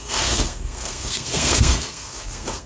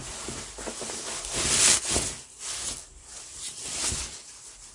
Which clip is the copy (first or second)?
first